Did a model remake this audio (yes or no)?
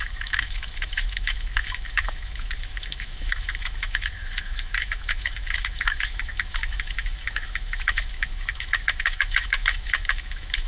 yes